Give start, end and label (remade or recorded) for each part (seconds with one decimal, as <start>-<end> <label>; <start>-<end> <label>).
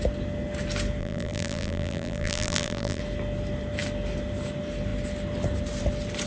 0.0-1.0 recorded; 1.0-3.0 remade; 3.0-6.3 recorded